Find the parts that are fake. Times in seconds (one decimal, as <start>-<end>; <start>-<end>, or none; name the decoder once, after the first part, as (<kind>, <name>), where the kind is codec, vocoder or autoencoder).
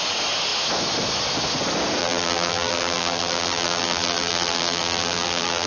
2.0-5.7 (vocoder, BigVGAN v2)